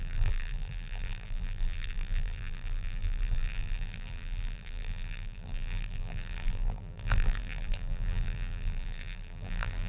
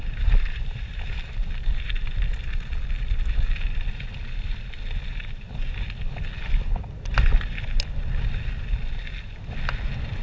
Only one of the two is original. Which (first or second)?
second